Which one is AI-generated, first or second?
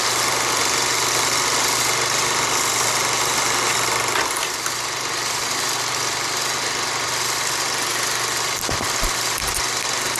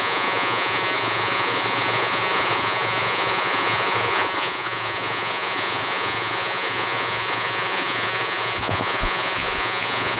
second